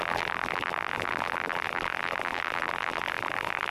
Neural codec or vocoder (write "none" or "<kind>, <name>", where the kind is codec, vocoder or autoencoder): vocoder, BigVGAN v2